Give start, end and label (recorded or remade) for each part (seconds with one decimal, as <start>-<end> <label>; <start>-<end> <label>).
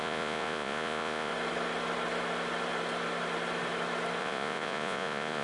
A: 0.0-1.3 remade; 1.3-4.2 recorded; 4.2-5.4 remade